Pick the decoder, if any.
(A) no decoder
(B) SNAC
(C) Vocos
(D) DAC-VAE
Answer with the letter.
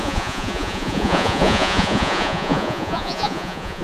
C